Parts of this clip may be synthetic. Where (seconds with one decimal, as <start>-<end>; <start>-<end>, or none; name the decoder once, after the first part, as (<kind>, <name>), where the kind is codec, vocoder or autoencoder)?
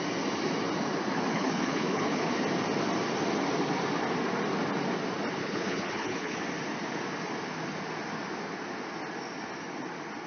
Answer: 1.3-2.3 (codec, HILCodec); 5.4-6.4